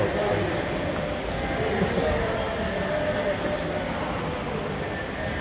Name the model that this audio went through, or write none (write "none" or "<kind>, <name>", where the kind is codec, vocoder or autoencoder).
none